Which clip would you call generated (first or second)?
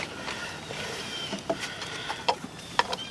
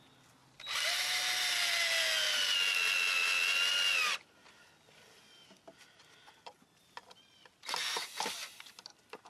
first